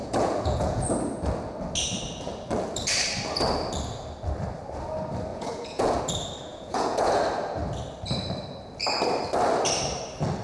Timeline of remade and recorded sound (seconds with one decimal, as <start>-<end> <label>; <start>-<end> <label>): 0.0-0.9 remade; 0.9-5.3 recorded; 5.3-6.0 remade; 6.0-6.5 recorded; 6.5-7.2 remade; 7.2-10.4 recorded